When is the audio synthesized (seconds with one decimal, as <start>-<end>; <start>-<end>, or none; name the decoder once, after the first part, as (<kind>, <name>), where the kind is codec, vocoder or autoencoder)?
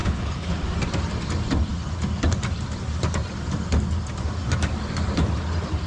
0.0-0.5 (codec, HILCodec)